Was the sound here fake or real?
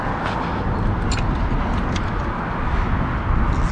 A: real